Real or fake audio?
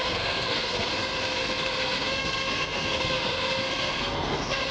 fake